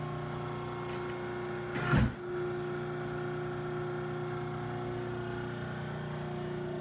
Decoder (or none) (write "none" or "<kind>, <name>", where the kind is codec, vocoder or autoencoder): none